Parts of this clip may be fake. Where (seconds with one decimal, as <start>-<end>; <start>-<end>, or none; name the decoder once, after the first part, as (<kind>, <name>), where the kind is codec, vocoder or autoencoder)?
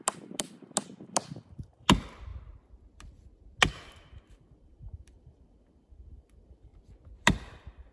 0.0-2.3 (vocoder, BigVGAN v2); 3.7-6.7; 7.4-7.9